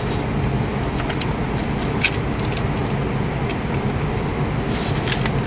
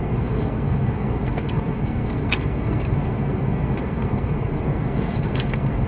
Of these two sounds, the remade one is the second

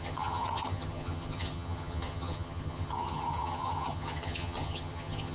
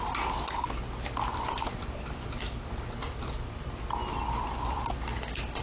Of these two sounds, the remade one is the first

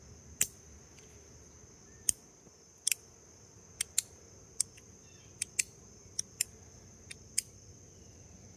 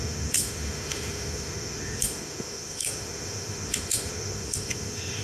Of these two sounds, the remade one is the second